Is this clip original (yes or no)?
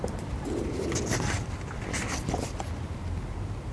no